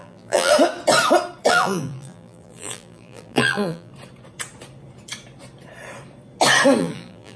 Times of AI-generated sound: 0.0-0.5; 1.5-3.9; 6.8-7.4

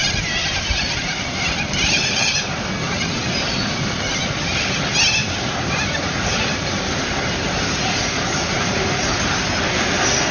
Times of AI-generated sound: 0.0-2.6; 5.2-9.0

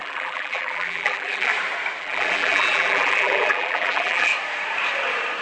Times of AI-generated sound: 0.0-1.5; 2.0-4.3

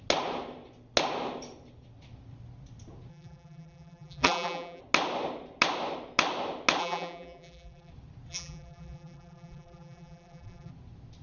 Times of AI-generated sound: 3.1-4.8; 6.8-7.9; 8.3-10.7

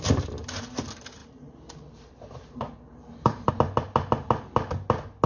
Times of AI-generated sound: 1.2-3.5

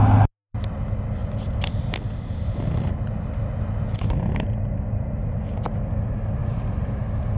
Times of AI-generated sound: 6.4-7.4

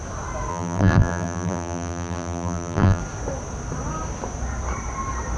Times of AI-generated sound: 0.5-3.0

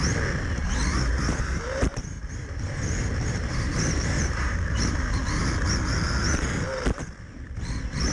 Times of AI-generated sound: 0.6-5.2